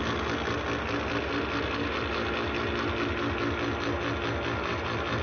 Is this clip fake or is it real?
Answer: real